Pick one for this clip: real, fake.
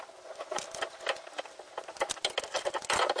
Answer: real